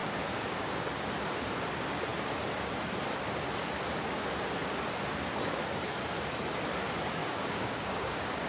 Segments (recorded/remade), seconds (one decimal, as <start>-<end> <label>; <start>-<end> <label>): 0.0-0.9 remade; 0.9-7.2 recorded; 7.2-8.5 remade